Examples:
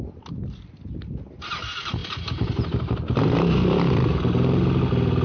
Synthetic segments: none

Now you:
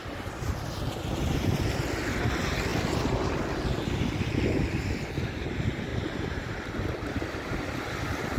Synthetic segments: 5.9-6.7

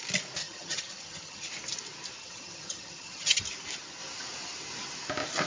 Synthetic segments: 0.4-1.5; 2.2-3.4

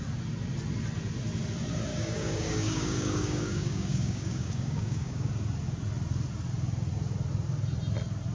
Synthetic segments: 1.9-5.3